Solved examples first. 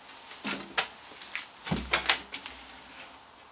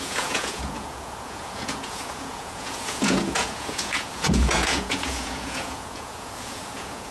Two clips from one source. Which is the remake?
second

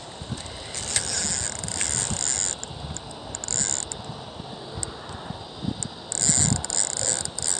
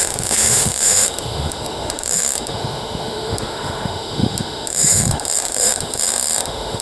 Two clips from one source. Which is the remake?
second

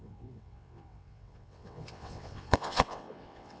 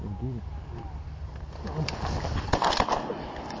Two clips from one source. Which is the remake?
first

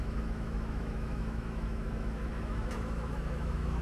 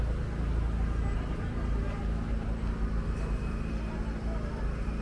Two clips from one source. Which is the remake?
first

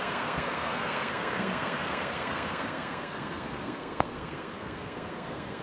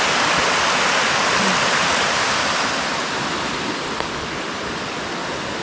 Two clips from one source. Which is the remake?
first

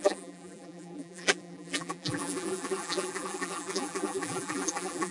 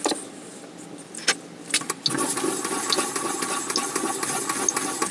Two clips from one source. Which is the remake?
first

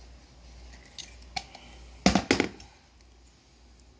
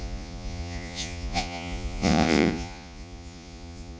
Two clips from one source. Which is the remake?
second